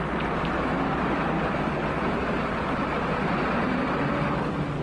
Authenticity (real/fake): real